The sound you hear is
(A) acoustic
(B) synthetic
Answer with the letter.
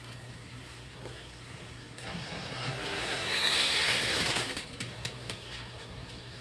B